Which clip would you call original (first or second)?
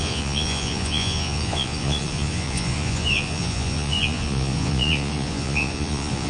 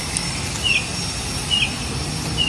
second